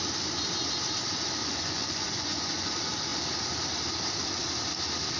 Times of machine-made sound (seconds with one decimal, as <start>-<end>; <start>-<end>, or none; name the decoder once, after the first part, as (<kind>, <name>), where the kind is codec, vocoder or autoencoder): 1.4-2.7 (vocoder, Vocos)